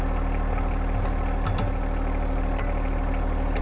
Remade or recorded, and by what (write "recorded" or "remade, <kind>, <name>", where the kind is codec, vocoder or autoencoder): recorded